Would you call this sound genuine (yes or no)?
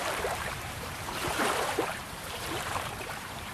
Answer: no